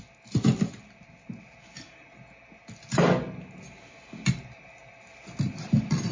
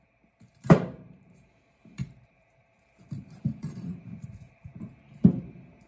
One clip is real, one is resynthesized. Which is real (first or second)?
first